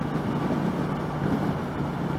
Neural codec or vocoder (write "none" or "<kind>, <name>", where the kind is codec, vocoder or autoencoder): none